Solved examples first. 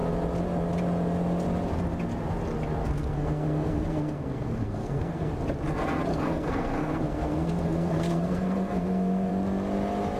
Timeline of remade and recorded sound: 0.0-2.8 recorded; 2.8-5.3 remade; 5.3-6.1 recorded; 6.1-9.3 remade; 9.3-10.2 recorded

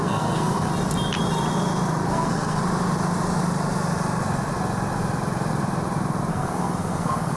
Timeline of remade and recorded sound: 0.0-0.7 remade; 0.7-2.1 recorded; 2.1-2.6 remade; 2.6-6.3 recorded; 6.3-7.4 remade

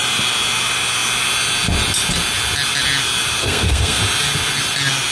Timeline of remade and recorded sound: 0.0-3.4 recorded; 3.4-4.0 remade; 4.0-5.1 recorded

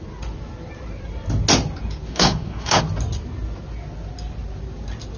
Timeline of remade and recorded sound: 0.0-2.1 recorded; 2.1-2.8 remade; 2.8-5.2 recorded

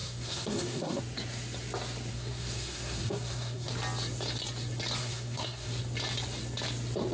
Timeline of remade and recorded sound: 0.0-1.0 remade; 1.0-2.1 recorded; 2.1-3.7 remade; 3.7-5.0 recorded; 5.0-5.7 remade; 5.7-7.1 recorded

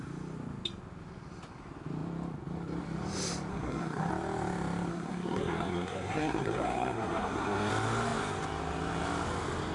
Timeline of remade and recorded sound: 0.0-3.5 recorded; 3.5-4.1 remade; 4.1-4.9 recorded; 4.9-7.7 remade; 7.7-9.7 recorded

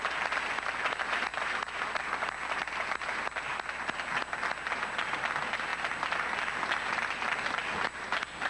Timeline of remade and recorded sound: 0.0-8.5 recorded